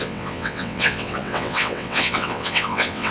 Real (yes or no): no